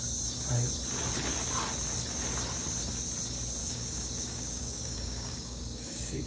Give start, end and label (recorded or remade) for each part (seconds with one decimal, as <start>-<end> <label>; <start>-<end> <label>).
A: 0.0-3.6 recorded; 3.6-6.3 remade